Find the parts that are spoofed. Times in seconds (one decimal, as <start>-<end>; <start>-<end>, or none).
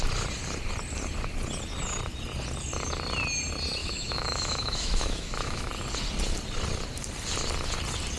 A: 3.8-5.7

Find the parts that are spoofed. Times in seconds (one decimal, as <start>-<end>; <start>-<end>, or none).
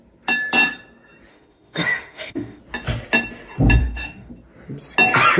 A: 1.3-2.6; 3.8-4.3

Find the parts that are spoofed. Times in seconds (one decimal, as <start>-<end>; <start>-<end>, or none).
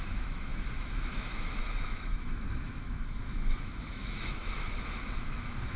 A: 0.0-5.8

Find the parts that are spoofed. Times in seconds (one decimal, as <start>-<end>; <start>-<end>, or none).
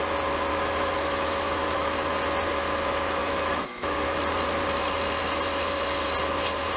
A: 0.5-2.1; 3.2-4.2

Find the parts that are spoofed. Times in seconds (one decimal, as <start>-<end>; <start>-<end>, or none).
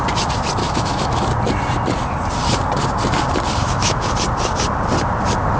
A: 0.6-1.3; 3.6-4.1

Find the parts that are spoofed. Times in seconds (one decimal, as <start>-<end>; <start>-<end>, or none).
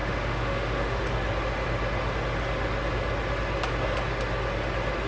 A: 0.0-1.0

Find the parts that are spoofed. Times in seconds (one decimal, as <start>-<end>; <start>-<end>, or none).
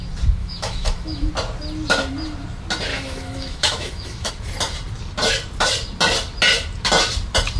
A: 0.4-1.3; 2.9-4.3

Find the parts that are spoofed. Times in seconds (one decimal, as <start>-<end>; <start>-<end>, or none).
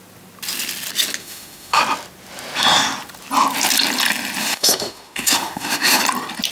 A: 1.2-1.8; 4.4-6.0